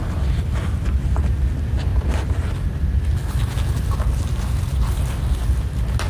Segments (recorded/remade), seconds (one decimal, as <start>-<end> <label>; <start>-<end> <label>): 0.0-6.1 recorded